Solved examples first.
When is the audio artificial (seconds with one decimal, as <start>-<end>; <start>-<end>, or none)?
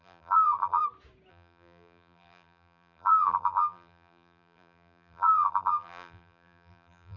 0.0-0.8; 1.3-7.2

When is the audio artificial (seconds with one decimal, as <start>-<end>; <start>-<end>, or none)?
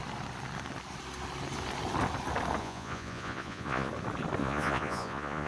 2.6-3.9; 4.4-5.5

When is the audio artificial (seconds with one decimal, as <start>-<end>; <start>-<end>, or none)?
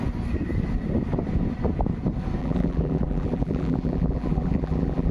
2.4-5.1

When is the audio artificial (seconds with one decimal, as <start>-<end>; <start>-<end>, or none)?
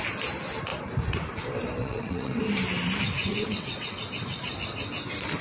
1.8-2.4; 3.2-4.0